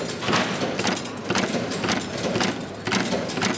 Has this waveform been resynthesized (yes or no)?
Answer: no